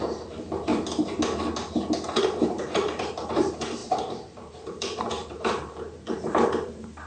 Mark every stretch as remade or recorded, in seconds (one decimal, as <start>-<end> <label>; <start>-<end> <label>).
0.0-0.7 remade; 0.7-2.2 recorded; 2.2-7.1 remade